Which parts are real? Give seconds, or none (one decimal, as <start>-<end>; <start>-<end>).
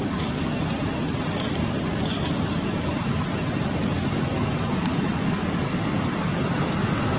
5.1-7.2